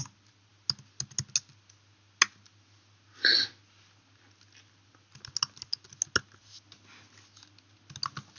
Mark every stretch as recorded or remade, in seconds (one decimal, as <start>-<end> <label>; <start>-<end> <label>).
0.0-8.4 recorded